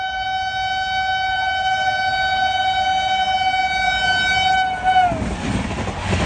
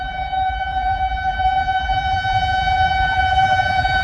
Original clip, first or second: first